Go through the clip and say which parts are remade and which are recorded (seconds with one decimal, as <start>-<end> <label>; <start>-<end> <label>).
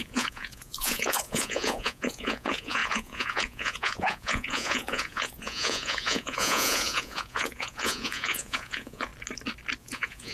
0.0-9.1 remade; 9.1-9.8 recorded; 9.8-10.3 remade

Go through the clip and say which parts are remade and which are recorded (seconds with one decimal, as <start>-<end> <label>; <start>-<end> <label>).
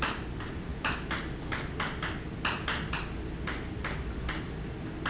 0.0-5.1 recorded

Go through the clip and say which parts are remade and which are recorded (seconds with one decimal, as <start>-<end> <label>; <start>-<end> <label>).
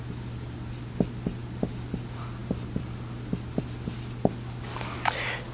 0.0-5.5 recorded